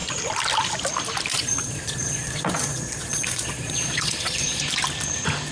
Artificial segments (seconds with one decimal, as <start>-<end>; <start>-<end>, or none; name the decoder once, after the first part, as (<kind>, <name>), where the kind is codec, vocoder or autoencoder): 1.3-4.6 (vocoder, Vocos)

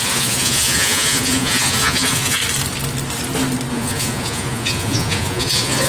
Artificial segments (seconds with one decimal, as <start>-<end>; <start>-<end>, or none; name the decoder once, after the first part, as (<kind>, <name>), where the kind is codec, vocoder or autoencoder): 0.0-2.4 (vocoder, Vocos); 3.7-5.9

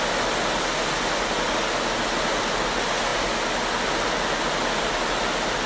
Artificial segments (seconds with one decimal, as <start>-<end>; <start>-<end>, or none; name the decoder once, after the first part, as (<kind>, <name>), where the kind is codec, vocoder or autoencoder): none

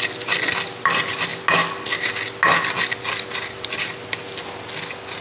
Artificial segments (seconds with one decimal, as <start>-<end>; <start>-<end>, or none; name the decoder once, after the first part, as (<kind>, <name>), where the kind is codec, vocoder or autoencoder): none

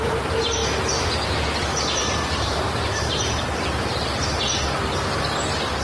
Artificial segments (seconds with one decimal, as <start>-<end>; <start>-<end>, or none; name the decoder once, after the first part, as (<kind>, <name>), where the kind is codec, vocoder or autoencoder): 2.0-3.5 (vocoder, BigVGAN v2)

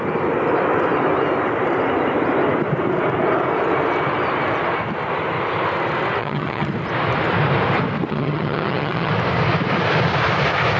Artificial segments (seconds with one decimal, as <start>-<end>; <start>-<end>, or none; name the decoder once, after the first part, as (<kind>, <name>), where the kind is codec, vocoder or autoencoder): 6.2-6.7 (vocoder, HiFi-GAN); 8.1-9.1

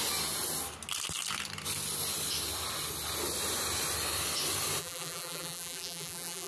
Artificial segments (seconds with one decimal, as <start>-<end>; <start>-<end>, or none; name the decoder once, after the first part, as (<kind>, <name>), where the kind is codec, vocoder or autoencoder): 4.8-6.5 (vocoder, BigVGAN v2)